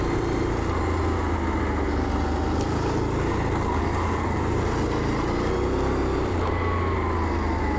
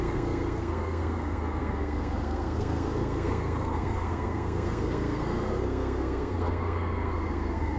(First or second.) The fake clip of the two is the second